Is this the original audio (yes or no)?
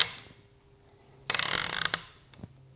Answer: yes